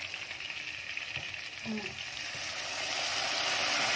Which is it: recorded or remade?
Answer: recorded